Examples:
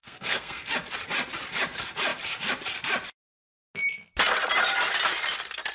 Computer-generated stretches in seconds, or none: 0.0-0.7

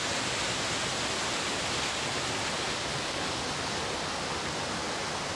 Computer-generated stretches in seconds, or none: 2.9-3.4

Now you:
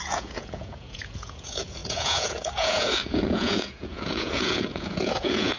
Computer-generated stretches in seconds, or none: 0.0-5.6